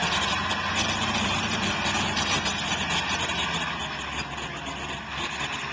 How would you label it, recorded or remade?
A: recorded